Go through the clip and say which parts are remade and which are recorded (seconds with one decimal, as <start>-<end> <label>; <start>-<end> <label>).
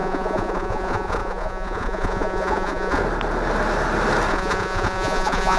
0.0-3.0 remade; 3.0-4.3 recorded; 4.3-5.6 remade